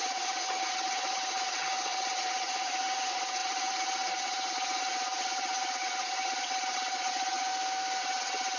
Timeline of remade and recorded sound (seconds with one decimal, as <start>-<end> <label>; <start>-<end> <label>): 0.0-7.5 remade; 7.5-8.0 recorded; 8.0-8.6 remade